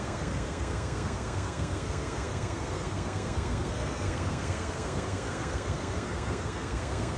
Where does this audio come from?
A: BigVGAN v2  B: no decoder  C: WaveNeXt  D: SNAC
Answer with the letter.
D